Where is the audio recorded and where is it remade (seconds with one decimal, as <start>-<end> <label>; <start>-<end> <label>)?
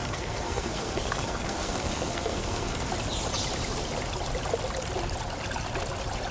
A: 0.0-2.9 remade; 2.9-6.3 recorded